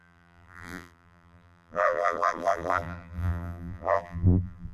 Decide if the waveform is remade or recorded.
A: remade